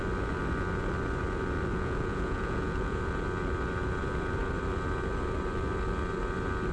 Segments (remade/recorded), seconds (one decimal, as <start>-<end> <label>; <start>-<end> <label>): 0.0-1.7 recorded; 1.7-3.0 remade; 3.0-6.7 recorded